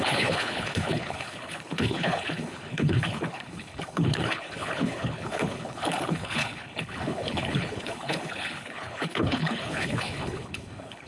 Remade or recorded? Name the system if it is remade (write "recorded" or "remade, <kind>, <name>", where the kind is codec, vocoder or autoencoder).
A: remade, codec, HILCodec